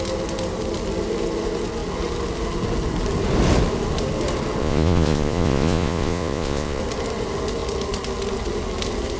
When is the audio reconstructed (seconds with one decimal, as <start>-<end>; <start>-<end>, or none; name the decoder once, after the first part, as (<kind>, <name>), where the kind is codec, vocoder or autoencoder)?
4.6-6.8 (vocoder, Vocos)